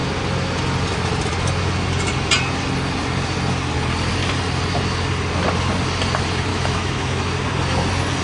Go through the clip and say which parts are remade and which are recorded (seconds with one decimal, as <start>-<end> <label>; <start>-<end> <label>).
0.0-6.5 recorded; 6.5-7.2 remade; 7.2-8.2 recorded